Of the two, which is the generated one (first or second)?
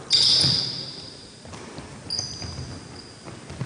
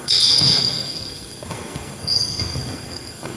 second